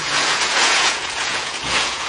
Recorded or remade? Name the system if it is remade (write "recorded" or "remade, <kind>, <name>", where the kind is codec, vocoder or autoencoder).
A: remade, vocoder, Vocos